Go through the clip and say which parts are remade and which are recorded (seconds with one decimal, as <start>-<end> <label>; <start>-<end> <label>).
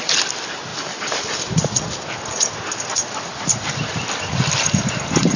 0.0-5.4 recorded